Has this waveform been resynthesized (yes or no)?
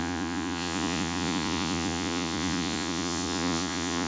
yes